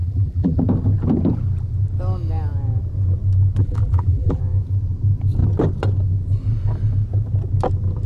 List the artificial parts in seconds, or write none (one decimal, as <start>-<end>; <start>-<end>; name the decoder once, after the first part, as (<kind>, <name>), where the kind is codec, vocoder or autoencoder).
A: 0.0-0.6 (vocoder, BigVGAN v2); 3.6-4.4